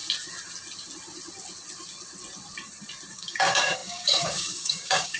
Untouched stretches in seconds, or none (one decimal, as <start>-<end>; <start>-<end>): 0.0-3.1